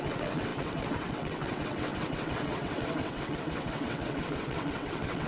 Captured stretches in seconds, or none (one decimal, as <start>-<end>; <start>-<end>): none